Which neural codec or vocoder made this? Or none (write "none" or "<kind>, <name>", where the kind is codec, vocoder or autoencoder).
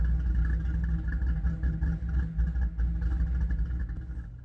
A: none